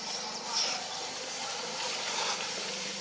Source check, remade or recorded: remade